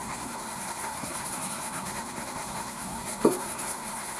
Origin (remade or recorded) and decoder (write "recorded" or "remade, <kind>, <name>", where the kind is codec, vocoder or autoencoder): remade, codec, SNAC